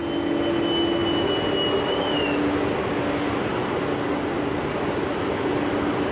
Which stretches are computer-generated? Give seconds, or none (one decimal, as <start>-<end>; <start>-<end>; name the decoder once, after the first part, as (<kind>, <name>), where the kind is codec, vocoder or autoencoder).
none